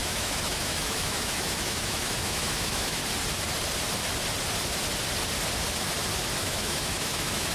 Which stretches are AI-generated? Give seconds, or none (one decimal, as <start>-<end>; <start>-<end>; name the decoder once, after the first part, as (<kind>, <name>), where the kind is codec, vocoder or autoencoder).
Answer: 0.0-3.0 (autoencoder, DAC-VAE); 6.4-7.5